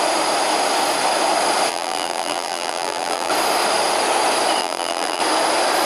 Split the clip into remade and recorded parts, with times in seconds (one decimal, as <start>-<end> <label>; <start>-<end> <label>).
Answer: 0.0-1.7 recorded; 1.7-3.3 remade; 3.3-4.6 recorded; 4.6-5.2 remade; 5.2-5.9 recorded